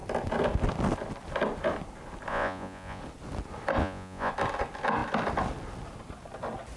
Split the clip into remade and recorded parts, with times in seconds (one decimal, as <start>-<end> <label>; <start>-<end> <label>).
0.0-2.3 recorded; 2.3-3.0 remade; 3.0-3.8 recorded; 3.8-4.3 remade; 4.3-6.8 recorded